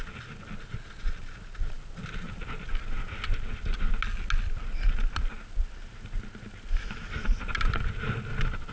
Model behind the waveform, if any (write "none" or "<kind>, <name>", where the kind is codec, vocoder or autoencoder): none